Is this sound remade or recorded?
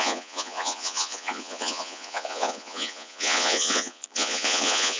remade